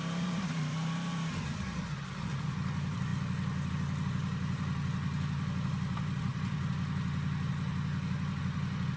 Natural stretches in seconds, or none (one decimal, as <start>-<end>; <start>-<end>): 3.1-3.7